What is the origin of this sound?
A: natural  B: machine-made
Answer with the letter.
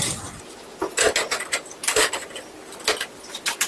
A